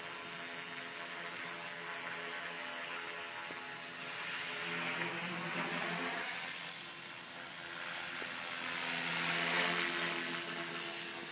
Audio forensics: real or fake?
real